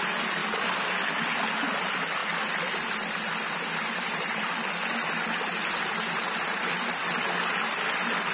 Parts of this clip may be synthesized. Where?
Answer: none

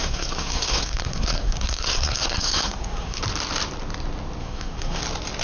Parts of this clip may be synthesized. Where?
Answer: 0.0-3.2 (codec, SNAC); 4.4-5.0